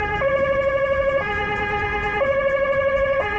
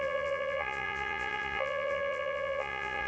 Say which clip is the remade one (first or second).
second